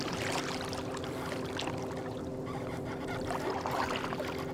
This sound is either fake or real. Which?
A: real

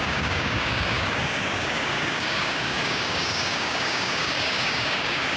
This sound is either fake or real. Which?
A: fake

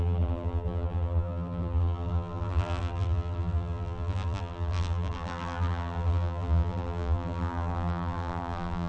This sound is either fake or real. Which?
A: fake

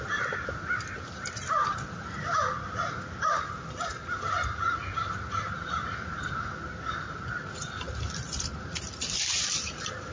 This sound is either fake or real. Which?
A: real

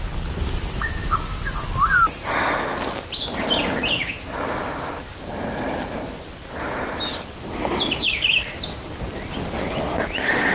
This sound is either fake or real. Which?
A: real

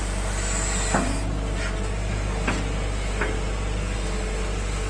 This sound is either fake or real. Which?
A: real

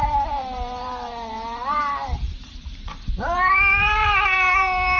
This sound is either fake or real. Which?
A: fake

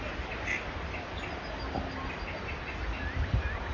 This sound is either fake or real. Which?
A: real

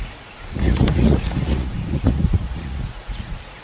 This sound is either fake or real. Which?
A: fake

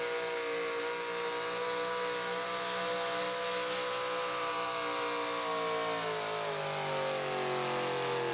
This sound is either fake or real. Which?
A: real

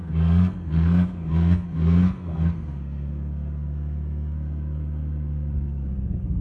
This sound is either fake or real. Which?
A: fake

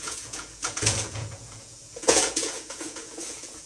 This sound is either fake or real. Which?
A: fake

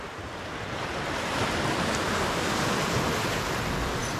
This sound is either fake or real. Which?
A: real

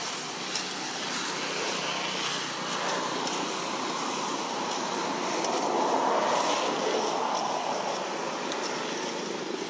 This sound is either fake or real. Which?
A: real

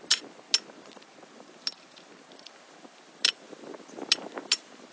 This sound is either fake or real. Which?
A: real